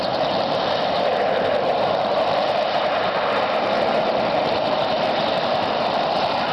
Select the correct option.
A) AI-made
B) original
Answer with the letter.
A